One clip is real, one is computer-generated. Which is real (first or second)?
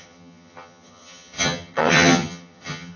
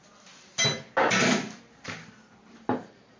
second